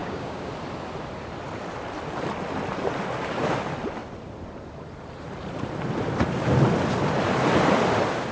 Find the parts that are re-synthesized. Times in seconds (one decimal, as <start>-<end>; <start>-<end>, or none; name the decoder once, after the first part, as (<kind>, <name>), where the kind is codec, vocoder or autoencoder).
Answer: 0.0-0.5 (codec, DAC)